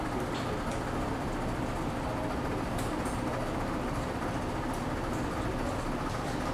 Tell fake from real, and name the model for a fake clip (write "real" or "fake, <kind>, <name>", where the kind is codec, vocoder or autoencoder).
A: real